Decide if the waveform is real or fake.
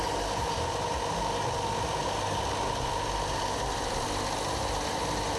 real